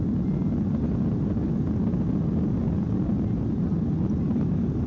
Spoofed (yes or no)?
no